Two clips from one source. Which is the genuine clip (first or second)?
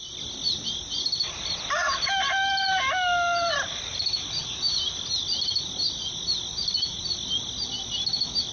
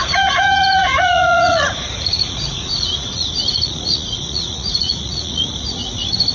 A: first